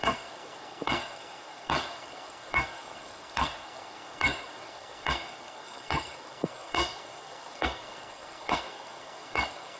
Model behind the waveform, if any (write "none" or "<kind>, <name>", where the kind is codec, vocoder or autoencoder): codec, SNAC